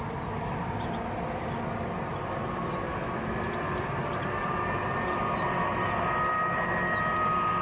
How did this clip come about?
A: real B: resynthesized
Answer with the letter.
A